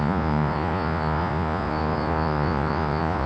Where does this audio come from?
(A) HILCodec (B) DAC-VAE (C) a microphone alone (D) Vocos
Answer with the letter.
D